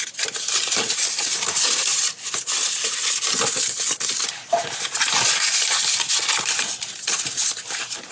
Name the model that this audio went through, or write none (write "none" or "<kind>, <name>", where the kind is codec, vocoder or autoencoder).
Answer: none